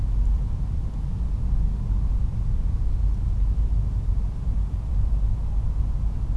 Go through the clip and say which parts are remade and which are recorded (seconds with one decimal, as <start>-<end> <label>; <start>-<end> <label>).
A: 0.0-6.4 recorded